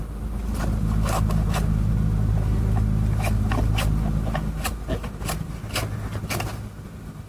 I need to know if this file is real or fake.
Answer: real